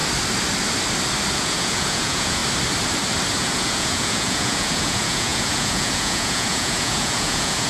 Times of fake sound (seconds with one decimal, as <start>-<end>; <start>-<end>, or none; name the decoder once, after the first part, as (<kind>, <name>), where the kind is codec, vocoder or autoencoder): 1.3-2.4 (vocoder, Vocos); 3.3-7.7